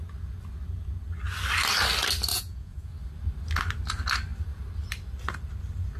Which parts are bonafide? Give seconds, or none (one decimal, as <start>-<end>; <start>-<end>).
0.0-2.3; 2.9-6.0